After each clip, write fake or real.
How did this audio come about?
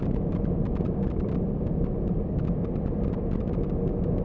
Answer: real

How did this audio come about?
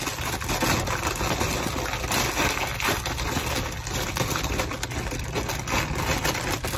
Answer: real